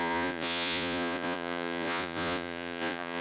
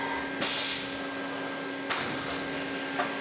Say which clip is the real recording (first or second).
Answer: second